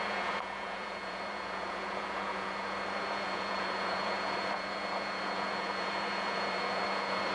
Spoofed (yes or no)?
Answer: yes